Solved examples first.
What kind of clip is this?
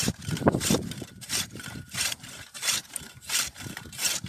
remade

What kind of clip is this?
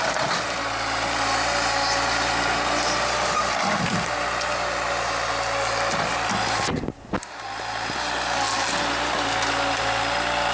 recorded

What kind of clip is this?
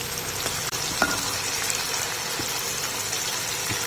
recorded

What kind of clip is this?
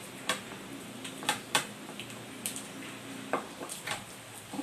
recorded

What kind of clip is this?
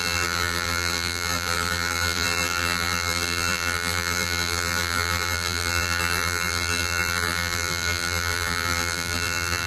remade